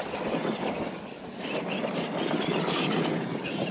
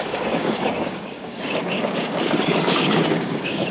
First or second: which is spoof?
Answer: second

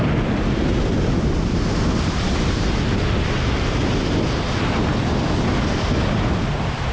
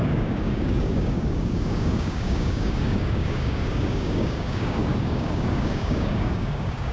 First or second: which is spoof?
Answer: second